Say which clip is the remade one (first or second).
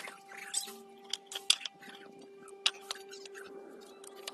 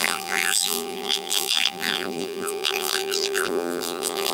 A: second